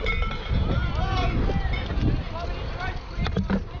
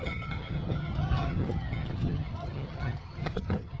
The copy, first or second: second